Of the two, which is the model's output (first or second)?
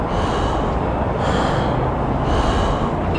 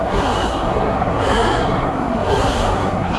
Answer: second